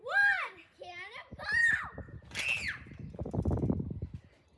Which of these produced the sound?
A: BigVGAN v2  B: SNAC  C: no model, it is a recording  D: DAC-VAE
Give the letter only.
C